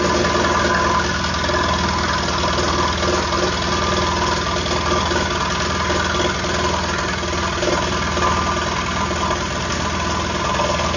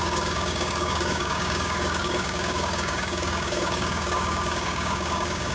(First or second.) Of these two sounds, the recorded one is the first